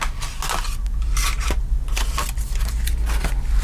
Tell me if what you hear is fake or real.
real